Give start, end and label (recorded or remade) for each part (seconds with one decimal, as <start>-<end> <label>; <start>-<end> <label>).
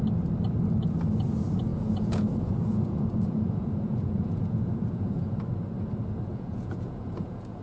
0.0-1.7 recorded; 1.7-5.4 remade; 5.4-6.3 recorded; 6.3-7.6 remade